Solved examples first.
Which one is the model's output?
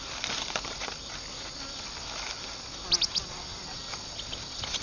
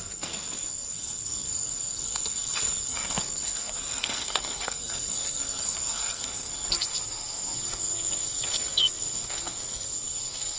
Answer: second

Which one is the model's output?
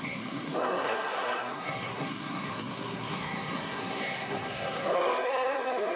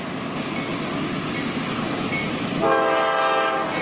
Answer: first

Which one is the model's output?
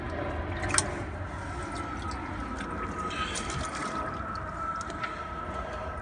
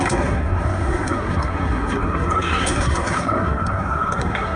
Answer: second